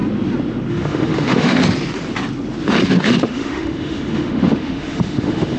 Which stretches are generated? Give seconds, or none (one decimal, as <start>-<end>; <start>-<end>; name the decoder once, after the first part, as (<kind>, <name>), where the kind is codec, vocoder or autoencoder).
0.7-1.6 (autoencoder, DAC-VAE); 2.9-5.6